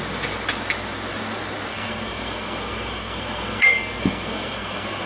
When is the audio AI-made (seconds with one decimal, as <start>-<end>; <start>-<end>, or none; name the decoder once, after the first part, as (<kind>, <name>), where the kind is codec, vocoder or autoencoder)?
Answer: 1.7-5.1 (codec, SNAC)